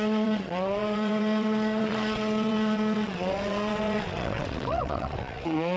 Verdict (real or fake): fake